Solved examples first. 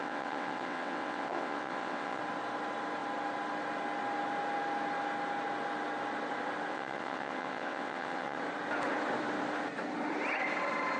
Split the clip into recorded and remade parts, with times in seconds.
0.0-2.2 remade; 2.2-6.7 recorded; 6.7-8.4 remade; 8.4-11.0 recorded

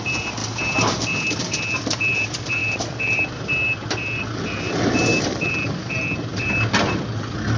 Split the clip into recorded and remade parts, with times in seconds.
0.0-0.4 remade; 0.4-1.4 recorded; 1.4-7.6 remade

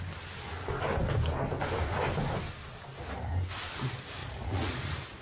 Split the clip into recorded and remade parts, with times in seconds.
0.0-4.2 recorded; 4.2-4.8 remade; 4.8-5.2 recorded